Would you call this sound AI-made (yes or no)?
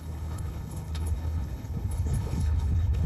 yes